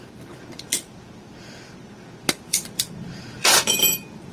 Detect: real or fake fake